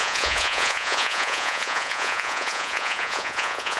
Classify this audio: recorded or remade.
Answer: remade